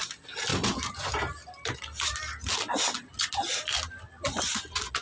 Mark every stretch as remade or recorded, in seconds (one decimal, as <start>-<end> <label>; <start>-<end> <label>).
0.0-5.0 recorded